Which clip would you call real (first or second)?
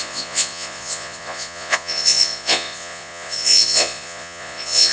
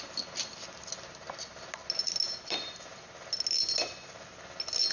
second